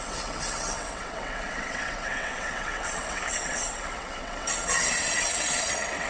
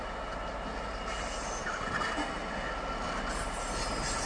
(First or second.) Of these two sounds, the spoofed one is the first